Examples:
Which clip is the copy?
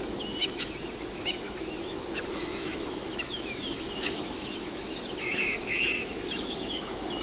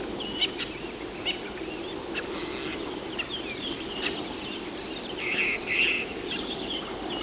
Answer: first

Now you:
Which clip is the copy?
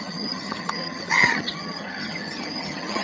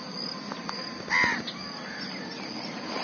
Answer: first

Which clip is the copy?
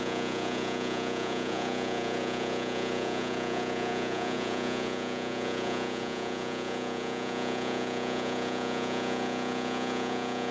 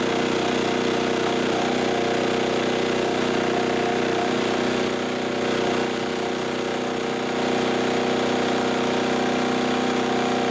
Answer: first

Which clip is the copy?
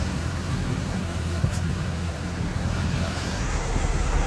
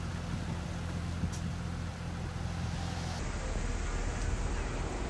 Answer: first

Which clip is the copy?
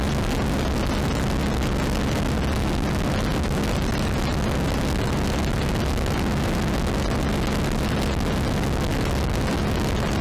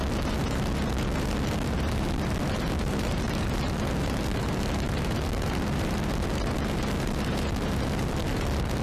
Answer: second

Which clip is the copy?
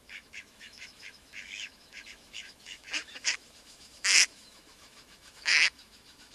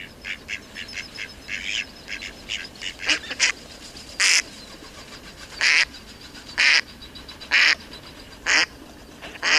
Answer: first